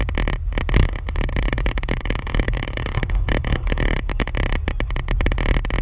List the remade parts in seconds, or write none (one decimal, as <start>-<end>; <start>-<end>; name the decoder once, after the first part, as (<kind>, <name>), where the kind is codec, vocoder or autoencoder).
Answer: 0.8-4.3 (codec, DAC)